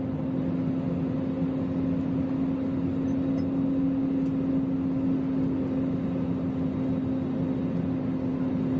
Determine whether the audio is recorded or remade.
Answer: recorded